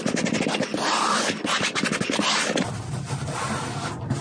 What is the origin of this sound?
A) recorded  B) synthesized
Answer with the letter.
A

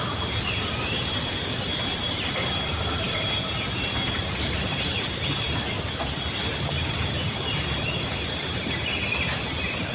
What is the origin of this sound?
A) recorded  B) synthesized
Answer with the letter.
B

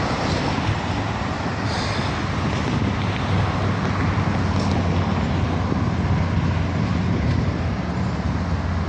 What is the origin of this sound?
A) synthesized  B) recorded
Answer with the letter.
B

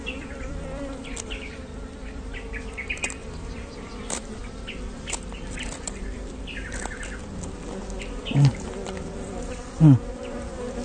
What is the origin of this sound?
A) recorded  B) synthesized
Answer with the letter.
B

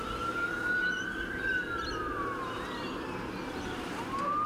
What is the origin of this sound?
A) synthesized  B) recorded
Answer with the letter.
A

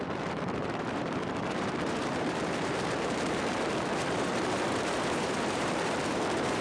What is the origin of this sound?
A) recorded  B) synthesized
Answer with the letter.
B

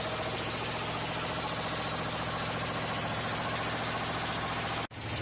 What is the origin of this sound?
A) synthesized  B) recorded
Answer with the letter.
B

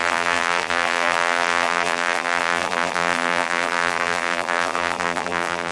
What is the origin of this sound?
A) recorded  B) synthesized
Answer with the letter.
B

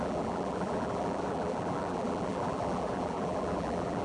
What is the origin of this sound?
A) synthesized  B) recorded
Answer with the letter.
A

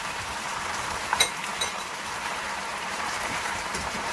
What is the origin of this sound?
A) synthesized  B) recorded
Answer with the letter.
A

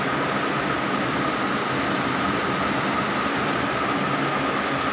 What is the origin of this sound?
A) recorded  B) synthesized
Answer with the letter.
A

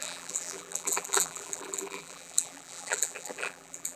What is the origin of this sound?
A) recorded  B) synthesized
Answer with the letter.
B